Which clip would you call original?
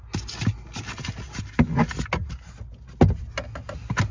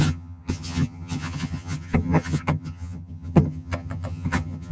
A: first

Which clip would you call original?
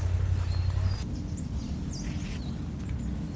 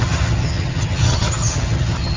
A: first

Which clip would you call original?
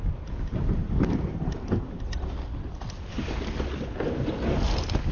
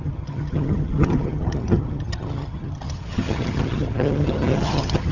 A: first